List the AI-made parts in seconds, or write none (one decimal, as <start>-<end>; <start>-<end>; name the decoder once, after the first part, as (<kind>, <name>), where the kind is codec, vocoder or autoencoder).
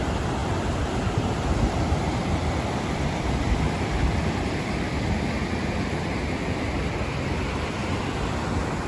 0.4-4.9 (vocoder, BigVGAN v2); 7.8-8.3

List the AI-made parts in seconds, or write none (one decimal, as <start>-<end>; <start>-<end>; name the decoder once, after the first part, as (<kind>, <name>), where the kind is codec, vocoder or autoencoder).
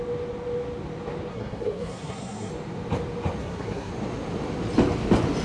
1.3-2.5 (codec, SNAC); 3.4-3.9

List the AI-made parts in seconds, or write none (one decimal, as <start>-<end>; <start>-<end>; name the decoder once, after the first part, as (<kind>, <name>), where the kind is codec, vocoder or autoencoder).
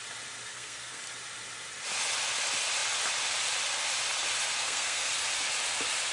0.5-1.0 (codec, SNAC); 4.6-5.1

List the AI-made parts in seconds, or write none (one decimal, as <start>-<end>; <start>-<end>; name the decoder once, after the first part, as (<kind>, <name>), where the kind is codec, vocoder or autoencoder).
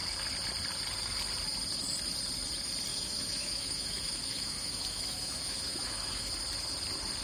2.9-6.3 (autoencoder, DAC-VAE)